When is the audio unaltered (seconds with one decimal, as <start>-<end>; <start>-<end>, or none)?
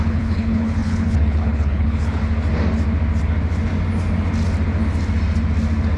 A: 2.2-6.0